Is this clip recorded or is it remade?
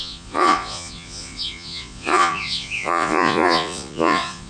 remade